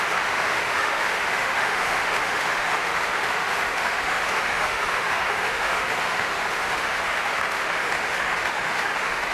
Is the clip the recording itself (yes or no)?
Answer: no